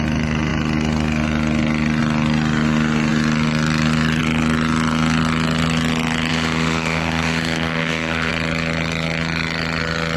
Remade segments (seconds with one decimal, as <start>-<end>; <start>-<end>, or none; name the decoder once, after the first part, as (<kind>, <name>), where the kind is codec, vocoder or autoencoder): 6.3-8.3 (autoencoder, DAC-VAE)